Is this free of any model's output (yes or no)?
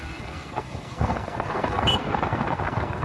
no